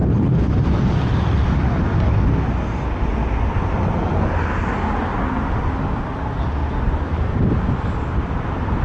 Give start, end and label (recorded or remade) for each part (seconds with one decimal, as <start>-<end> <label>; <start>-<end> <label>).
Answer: 0.0-0.5 remade; 0.5-8.8 recorded